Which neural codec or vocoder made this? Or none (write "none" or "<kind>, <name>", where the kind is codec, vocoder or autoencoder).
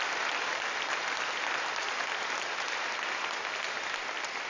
none